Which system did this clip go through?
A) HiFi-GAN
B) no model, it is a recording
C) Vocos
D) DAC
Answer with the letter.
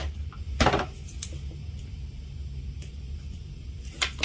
B